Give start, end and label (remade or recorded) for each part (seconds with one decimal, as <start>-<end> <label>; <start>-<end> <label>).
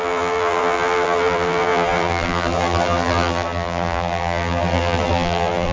0.0-5.7 remade